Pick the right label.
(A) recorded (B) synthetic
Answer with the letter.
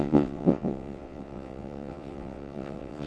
B